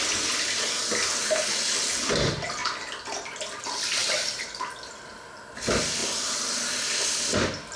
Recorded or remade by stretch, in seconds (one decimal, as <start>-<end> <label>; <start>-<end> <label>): 0.0-4.0 recorded; 4.0-4.7 remade; 4.7-6.0 recorded; 6.0-6.7 remade; 6.7-7.8 recorded